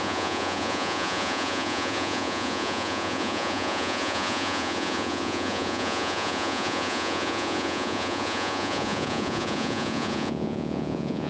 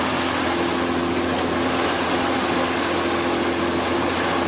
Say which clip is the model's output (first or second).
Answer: first